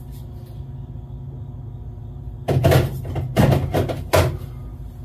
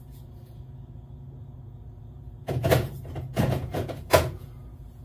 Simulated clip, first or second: second